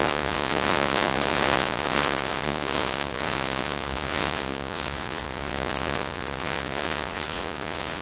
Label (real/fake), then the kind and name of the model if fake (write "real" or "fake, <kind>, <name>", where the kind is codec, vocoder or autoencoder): fake, vocoder, Vocos